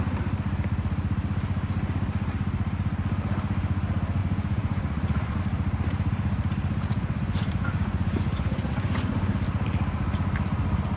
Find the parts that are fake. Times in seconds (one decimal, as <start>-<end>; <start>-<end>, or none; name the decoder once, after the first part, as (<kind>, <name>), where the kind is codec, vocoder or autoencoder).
4.2-5.4 (vocoder, Vocos); 6.9-9.3